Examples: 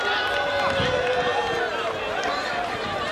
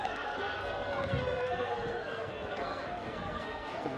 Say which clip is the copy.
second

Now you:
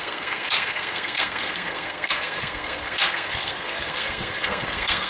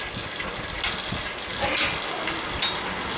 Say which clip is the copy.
first